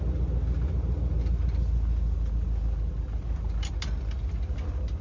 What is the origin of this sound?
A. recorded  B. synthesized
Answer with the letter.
A